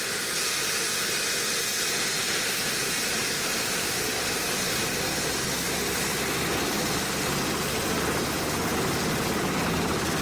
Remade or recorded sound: recorded